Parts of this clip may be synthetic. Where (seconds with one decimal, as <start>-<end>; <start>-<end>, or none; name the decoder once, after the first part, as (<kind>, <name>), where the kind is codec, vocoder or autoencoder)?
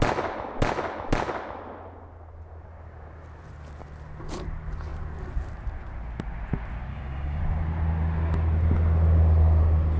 6.9-7.4 (codec, DAC)